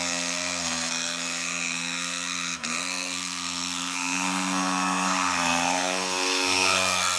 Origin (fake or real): fake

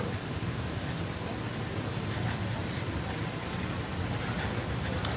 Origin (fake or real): real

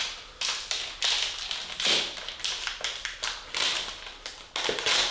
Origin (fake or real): real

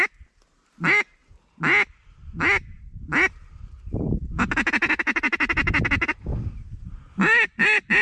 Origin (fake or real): real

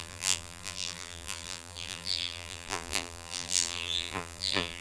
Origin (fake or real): fake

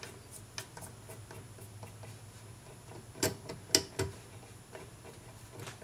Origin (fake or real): real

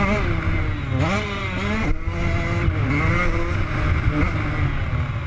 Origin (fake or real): real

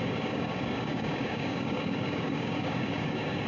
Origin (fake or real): fake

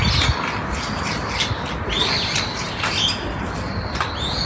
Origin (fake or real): real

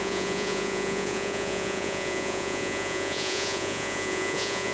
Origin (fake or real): fake